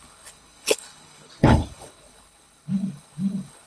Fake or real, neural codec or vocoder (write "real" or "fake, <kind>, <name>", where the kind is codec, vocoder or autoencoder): fake, codec, HILCodec